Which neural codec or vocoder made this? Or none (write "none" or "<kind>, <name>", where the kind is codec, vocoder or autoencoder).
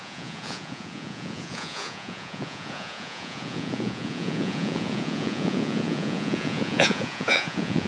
vocoder, Vocos